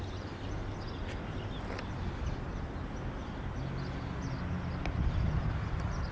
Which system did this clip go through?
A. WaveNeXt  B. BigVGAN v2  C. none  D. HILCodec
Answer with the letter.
C